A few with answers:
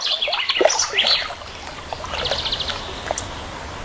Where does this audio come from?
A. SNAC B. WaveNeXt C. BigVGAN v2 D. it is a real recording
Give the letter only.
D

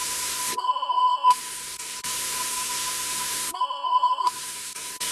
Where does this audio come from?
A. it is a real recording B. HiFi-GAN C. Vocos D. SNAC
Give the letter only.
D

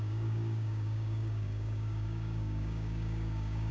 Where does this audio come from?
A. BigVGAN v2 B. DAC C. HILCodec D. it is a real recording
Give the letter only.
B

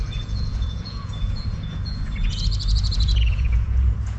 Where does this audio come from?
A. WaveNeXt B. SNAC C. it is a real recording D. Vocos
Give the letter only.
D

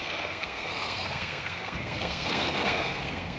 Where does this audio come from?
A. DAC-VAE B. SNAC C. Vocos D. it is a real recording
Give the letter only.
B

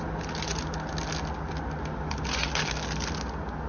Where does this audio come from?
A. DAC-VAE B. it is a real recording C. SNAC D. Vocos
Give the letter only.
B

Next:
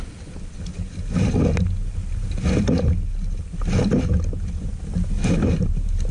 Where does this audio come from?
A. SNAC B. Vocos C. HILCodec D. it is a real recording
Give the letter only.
D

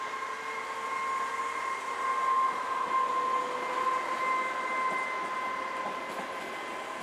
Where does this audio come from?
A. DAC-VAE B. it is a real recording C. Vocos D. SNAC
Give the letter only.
B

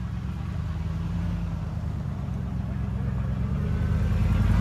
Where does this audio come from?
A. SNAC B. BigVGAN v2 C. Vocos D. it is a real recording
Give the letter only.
D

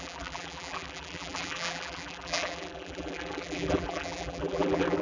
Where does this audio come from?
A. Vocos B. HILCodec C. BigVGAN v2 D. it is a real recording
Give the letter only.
C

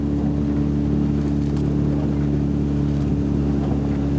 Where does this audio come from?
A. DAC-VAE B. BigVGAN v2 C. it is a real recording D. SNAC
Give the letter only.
C